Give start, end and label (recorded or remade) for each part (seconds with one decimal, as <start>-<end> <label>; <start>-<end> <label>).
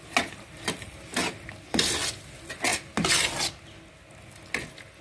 0.0-5.0 recorded